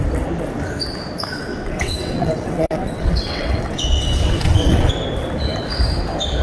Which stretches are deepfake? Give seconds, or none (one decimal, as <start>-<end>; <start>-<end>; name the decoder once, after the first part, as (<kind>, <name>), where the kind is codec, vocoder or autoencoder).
1.5-4.9 (vocoder, WaveNeXt)